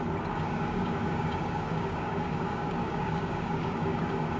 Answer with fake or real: fake